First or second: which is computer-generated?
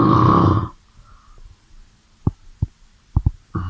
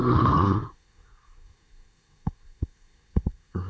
second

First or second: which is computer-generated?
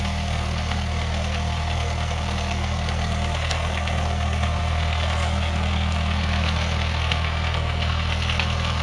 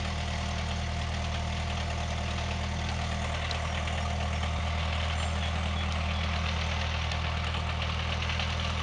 first